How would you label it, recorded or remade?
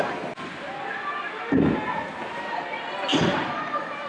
remade